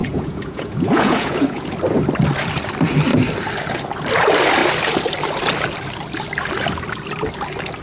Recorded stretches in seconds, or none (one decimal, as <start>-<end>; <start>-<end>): 1.7-7.8